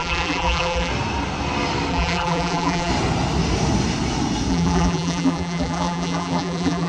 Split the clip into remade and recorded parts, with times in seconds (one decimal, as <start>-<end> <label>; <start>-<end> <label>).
0.0-0.9 remade; 0.9-1.9 recorded; 1.9-2.9 remade; 2.9-4.5 recorded; 4.5-6.9 remade